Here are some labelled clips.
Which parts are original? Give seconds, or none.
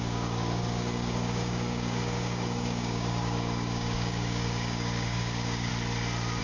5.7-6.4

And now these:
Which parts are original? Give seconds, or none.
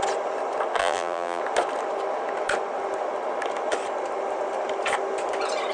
0.0-0.8; 1.4-5.7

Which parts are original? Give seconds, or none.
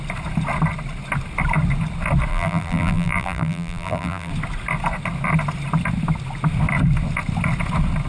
0.0-2.3; 4.3-8.1